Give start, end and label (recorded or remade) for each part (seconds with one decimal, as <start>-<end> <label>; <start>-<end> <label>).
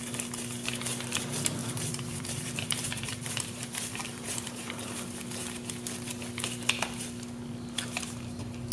0.0-1.6 recorded; 1.6-4.8 remade; 4.8-8.7 recorded